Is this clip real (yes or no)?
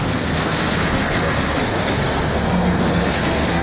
no